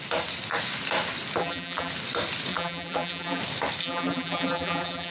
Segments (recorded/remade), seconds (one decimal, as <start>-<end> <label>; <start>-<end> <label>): 0.0-1.4 recorded; 1.4-1.9 remade; 1.9-2.5 recorded; 2.5-3.4 remade; 3.4-3.8 recorded; 3.8-5.1 remade